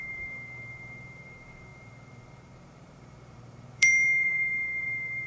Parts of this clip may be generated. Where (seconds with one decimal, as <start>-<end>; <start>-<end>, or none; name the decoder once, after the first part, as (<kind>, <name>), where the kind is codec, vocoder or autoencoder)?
0.0-5.3 (vocoder, BigVGAN v2)